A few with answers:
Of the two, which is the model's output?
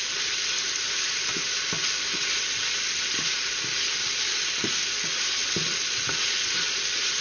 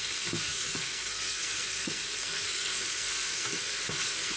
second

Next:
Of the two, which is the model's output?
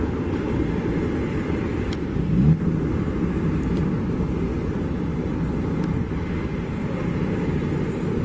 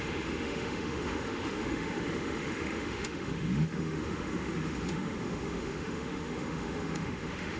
second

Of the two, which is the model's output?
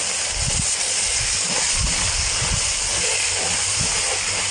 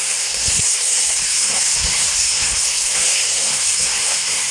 second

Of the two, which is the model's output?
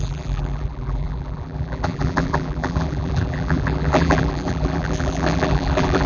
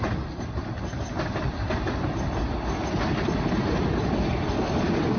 first